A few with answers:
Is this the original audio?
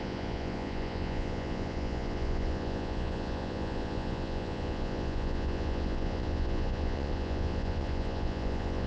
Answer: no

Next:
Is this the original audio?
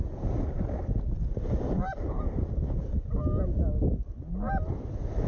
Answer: yes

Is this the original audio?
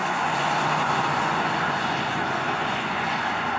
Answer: no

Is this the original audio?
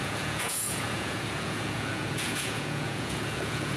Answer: no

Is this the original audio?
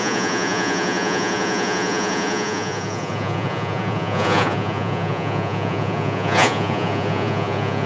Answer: no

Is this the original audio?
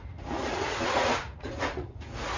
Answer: no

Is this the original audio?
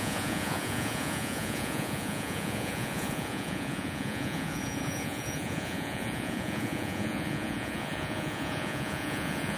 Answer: no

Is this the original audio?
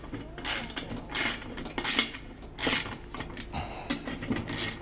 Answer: yes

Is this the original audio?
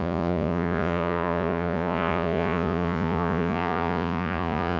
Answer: no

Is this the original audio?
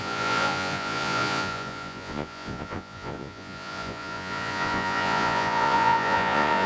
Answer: no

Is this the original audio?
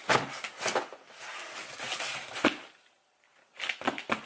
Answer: yes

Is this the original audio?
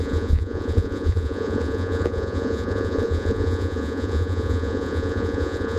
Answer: no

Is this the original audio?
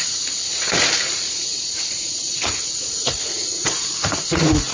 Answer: no